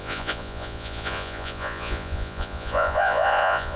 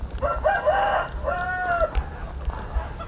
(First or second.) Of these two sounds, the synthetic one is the first